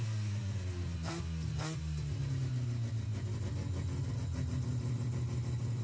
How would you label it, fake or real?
real